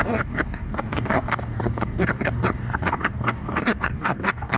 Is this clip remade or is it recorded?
remade